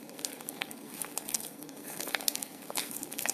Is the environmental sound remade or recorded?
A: remade